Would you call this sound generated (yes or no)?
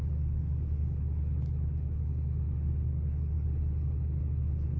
yes